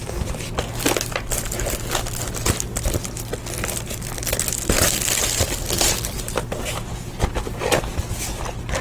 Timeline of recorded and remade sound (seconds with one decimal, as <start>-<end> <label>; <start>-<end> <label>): 0.0-8.8 recorded